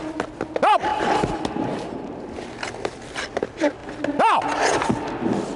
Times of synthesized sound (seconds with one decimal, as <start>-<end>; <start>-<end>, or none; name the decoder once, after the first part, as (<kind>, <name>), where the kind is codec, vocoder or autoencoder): none